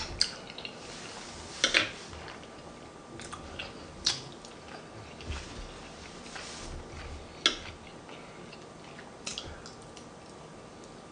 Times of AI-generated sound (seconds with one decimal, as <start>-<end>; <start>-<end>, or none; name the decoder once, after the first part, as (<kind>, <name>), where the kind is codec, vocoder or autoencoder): none